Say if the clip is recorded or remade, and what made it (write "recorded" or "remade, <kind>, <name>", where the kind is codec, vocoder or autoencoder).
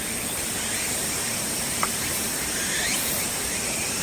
remade, vocoder, BigVGAN v2